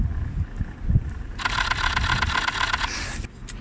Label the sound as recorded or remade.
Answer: recorded